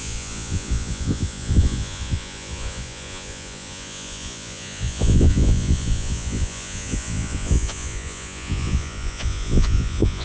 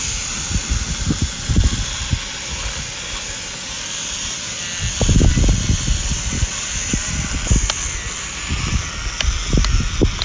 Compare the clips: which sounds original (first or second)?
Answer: second